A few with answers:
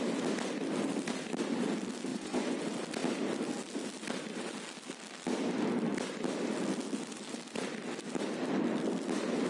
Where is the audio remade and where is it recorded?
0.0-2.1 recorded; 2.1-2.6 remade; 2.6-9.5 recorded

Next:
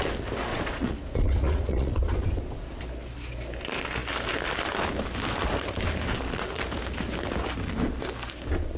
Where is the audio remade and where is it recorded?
0.0-0.5 recorded; 0.5-2.8 remade; 2.8-8.8 recorded